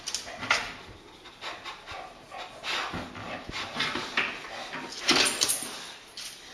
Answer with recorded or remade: recorded